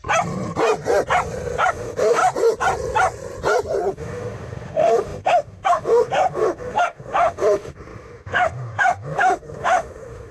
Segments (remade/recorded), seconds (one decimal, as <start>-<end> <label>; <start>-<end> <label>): 0.0-1.7 recorded; 1.7-2.2 remade; 2.2-3.9 recorded; 3.9-10.3 remade